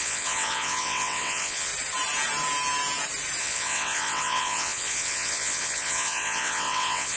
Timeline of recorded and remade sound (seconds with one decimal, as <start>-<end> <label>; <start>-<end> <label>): 0.0-1.7 remade; 1.7-3.4 recorded; 3.4-7.2 remade